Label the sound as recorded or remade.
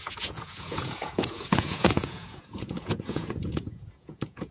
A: remade